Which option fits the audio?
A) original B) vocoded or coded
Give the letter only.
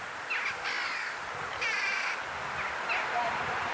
A